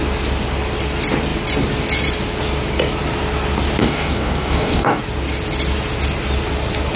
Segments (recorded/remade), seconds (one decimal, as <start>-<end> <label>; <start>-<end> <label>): 0.0-3.8 recorded; 3.8-5.0 remade; 5.0-7.0 recorded